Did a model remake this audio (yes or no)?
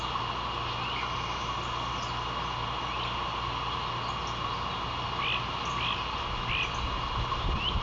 no